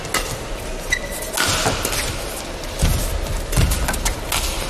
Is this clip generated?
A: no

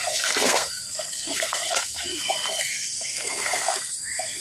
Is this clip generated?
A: yes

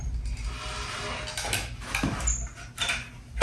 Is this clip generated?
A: no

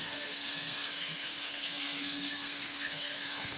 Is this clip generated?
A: yes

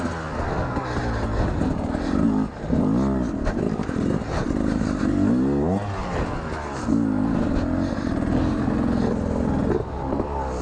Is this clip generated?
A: no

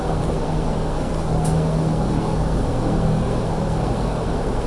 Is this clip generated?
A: yes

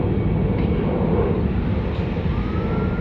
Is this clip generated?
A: no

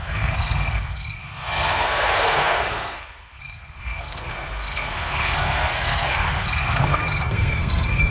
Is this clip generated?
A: yes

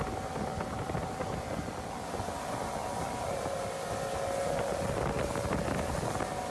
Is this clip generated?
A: no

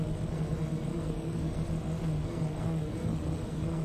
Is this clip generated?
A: yes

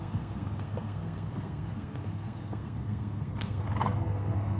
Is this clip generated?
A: yes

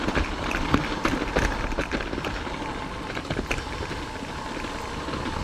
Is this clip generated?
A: no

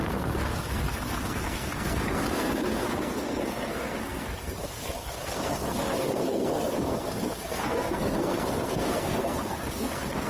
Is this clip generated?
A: yes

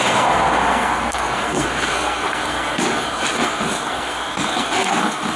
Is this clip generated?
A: yes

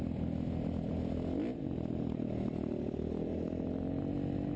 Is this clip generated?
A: no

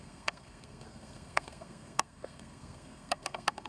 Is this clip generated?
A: yes